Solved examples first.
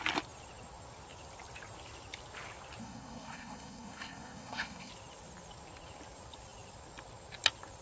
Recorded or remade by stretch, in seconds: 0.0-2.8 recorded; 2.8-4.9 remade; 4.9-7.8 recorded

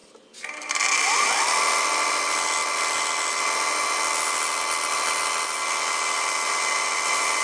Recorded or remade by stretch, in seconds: 0.0-7.4 recorded

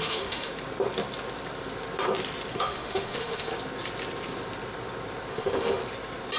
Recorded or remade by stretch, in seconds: 0.0-0.5 remade; 0.5-2.5 recorded; 2.5-3.5 remade; 3.5-5.3 recorded; 5.3-5.8 remade; 5.8-6.4 recorded